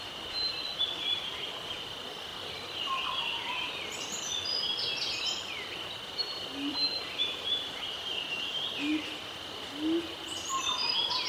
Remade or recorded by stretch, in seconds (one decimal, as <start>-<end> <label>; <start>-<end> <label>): 0.0-7.2 recorded; 7.2-7.8 remade; 7.8-11.3 recorded